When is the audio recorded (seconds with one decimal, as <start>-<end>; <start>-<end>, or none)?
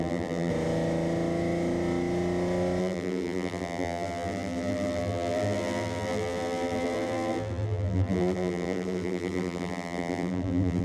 0.5-2.8